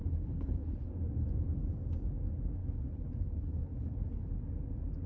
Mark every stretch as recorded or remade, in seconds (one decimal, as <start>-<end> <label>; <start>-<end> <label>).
0.0-0.9 remade; 0.9-2.6 recorded; 2.6-4.3 remade; 4.3-5.1 recorded